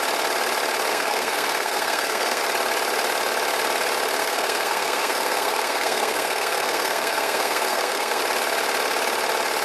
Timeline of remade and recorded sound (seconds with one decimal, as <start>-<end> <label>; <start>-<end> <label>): 0.0-0.9 recorded; 0.9-2.4 remade; 2.4-4.2 recorded; 4.2-8.2 remade; 8.2-9.6 recorded